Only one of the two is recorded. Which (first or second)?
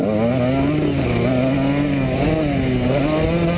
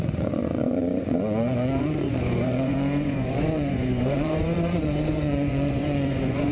first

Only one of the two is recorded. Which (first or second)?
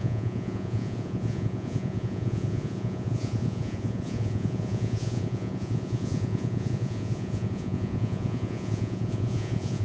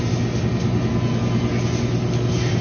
second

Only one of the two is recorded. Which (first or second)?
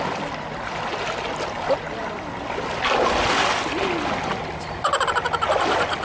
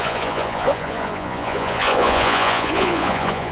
first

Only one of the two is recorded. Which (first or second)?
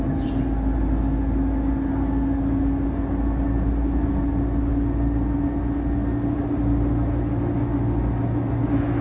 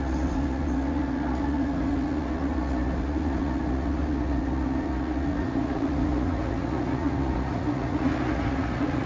first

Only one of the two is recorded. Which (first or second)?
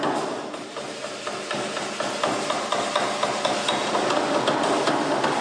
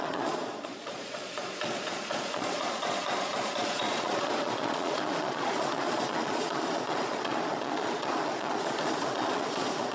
first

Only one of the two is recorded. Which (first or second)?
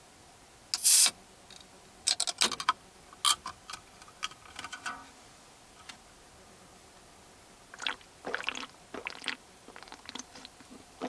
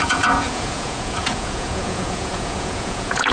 first